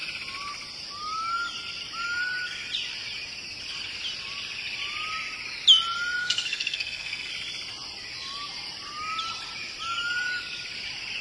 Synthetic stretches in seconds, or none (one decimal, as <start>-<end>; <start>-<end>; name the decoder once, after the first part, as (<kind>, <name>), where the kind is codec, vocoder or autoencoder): 6.2-7.3 (codec, SNAC)